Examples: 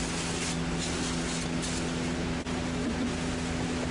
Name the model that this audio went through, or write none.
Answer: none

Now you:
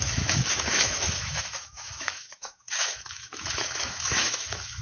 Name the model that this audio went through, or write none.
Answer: autoencoder, DAC-VAE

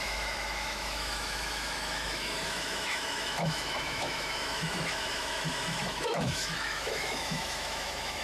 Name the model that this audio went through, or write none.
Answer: autoencoder, DAC-VAE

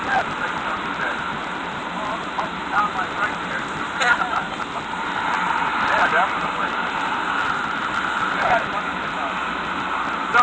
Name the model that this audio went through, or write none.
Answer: none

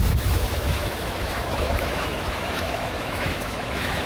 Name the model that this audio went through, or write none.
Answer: autoencoder, DAC-VAE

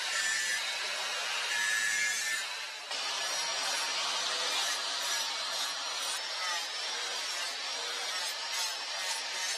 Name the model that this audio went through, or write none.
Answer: none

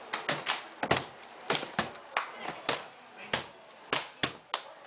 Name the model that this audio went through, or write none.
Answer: none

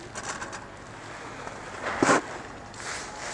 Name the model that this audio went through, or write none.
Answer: none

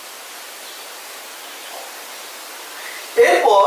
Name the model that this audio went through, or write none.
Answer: none